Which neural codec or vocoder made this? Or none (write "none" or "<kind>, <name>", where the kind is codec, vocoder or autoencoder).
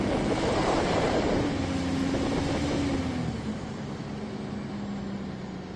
none